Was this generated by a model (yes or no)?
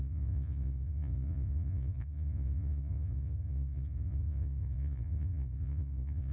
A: yes